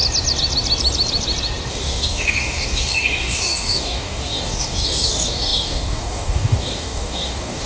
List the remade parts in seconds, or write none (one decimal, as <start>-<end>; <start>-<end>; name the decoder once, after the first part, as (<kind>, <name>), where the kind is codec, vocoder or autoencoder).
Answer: 1.7-7.7 (codec, DAC)